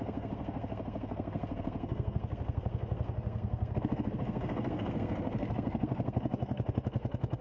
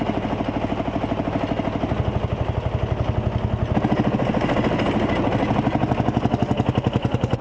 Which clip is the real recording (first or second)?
second